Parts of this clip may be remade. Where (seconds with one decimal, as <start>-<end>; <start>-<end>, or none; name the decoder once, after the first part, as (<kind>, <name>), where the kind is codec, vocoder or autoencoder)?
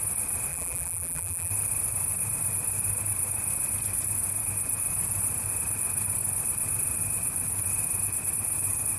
0.5-1.5 (vocoder, BigVGAN v2)